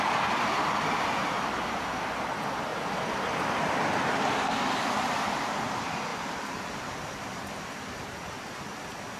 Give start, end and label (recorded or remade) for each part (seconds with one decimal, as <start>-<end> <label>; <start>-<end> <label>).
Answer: 0.0-6.1 recorded; 6.1-8.5 remade; 8.5-9.2 recorded